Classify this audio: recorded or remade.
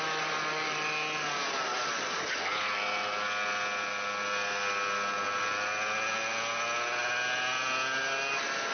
recorded